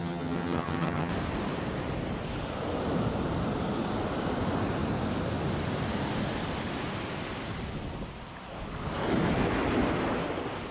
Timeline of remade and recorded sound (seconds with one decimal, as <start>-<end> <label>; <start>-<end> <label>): 0.0-1.1 remade; 1.1-10.7 recorded